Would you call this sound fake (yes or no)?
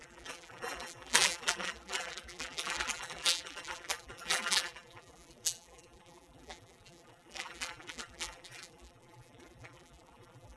yes